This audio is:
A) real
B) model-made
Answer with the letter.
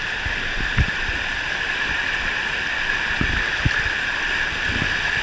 A